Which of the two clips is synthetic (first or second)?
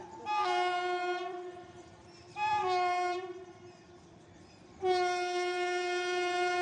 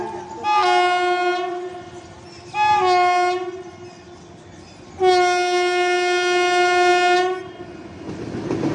first